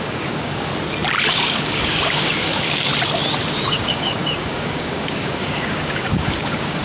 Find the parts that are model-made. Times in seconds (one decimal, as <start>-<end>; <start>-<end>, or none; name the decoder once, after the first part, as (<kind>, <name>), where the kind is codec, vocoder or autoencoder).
0.0-0.7 (codec, DAC); 1.3-2.9; 3.5-6.8